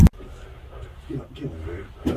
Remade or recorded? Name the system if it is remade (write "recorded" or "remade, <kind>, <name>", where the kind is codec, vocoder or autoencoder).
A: recorded